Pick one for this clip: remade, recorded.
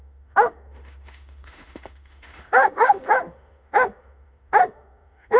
remade